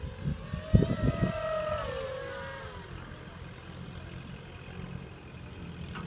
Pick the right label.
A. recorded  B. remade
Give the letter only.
A